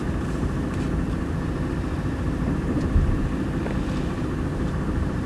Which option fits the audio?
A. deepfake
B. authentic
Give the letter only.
A